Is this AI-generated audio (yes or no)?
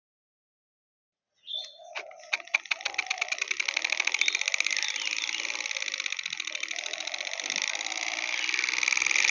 no